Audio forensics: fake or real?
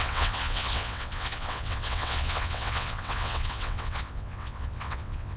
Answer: fake